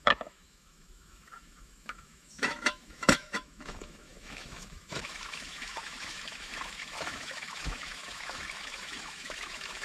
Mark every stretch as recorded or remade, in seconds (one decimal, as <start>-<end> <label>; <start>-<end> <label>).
0.0-9.8 remade